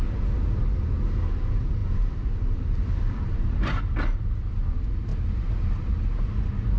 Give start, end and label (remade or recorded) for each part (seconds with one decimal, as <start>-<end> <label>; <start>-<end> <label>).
0.0-1.8 recorded; 1.8-3.8 remade; 3.8-6.8 recorded